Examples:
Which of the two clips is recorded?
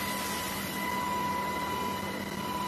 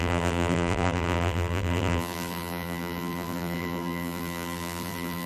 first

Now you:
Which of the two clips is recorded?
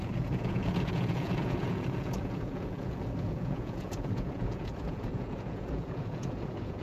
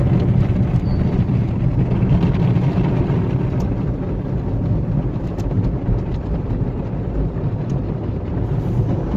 second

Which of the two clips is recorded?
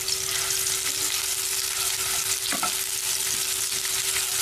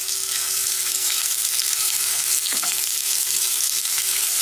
first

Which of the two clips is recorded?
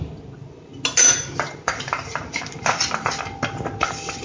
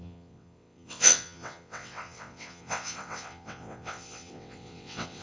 first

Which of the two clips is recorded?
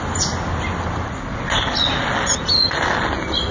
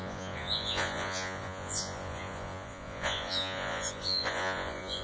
first